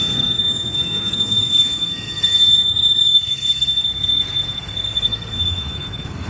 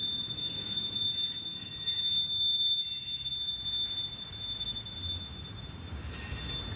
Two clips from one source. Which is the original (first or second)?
second